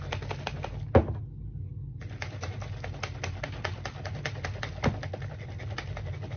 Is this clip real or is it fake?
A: real